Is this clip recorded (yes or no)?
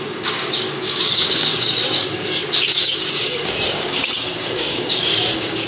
no